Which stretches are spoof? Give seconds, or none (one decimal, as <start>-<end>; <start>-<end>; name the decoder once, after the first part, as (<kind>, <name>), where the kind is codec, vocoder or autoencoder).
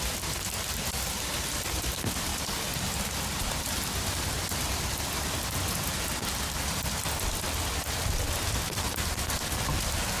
none